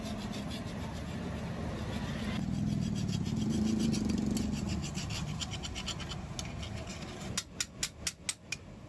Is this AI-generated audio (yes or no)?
no